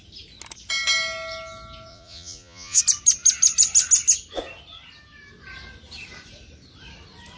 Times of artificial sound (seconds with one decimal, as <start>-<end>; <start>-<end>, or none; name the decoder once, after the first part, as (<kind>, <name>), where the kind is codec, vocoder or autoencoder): 1.9-2.8 (vocoder, Vocos)